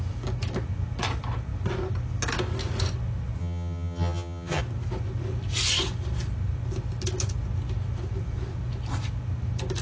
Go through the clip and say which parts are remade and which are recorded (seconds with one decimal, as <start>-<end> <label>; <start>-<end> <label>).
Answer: 0.0-3.4 recorded; 3.4-4.6 remade; 4.6-9.8 recorded